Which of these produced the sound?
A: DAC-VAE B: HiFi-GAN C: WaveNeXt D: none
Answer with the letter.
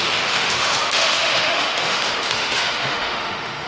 A